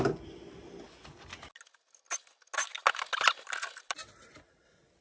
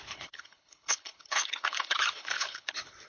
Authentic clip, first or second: first